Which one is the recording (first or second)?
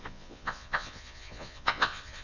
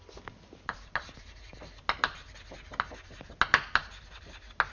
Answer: second